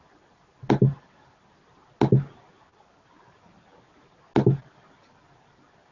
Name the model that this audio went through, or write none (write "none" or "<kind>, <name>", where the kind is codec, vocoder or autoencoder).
none